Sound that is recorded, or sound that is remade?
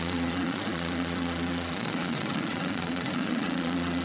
remade